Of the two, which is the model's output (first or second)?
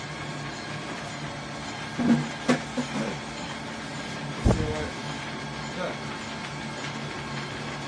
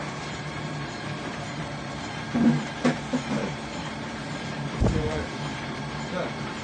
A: second